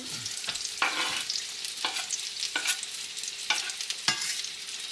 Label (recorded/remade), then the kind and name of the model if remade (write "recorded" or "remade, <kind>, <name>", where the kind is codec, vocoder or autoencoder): recorded